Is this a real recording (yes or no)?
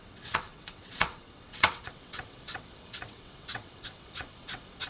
no